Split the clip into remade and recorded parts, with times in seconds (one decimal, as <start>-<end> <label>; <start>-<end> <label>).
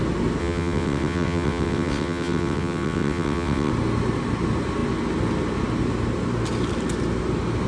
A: 0.0-0.4 recorded; 0.4-3.7 remade; 3.7-7.7 recorded